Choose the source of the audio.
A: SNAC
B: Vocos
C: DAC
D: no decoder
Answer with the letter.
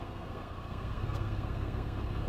A